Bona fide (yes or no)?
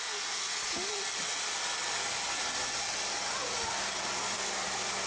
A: yes